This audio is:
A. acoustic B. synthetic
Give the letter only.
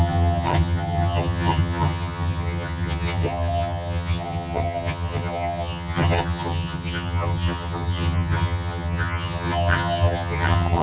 B